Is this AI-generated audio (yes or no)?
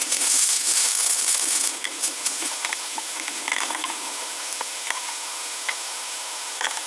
yes